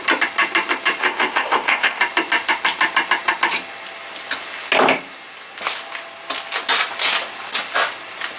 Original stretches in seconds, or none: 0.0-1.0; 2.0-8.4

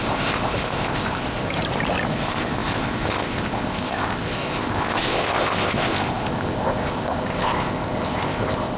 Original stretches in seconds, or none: 1.5-2.1

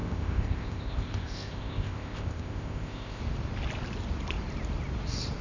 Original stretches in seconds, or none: 3.2-5.4